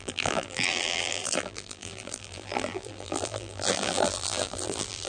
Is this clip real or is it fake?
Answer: fake